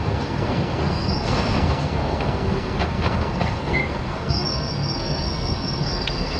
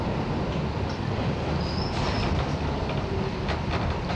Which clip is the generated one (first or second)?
first